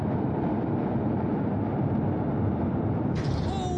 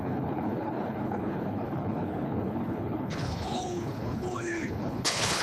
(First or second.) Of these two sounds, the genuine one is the first